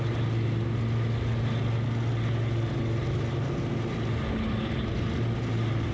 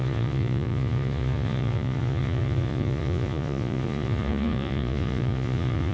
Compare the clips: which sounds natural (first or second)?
first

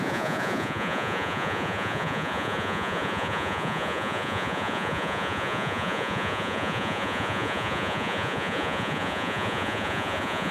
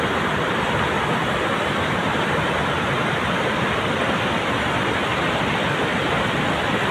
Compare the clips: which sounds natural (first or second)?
second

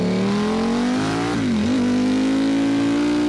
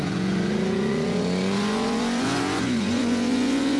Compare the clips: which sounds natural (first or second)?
first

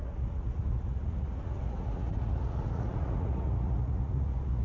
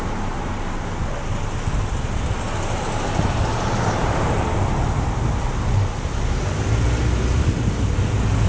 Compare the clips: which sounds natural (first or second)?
second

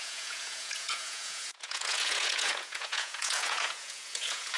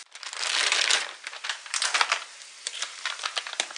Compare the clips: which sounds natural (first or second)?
second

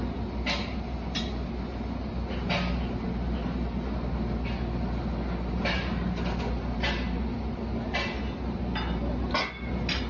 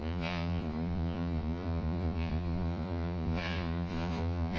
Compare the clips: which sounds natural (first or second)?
first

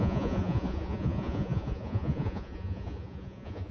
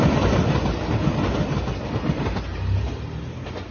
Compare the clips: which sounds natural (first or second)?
second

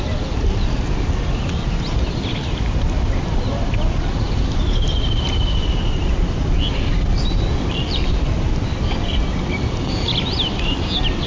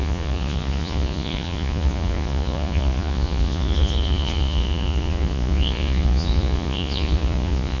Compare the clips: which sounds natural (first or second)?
first